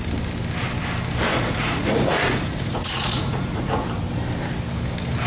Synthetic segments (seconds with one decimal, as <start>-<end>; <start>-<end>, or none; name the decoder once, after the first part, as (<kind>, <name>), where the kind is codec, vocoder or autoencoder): 1.3-3.9 (vocoder, Vocos)